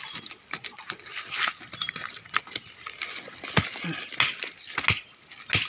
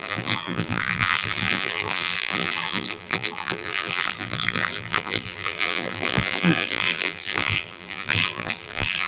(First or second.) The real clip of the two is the first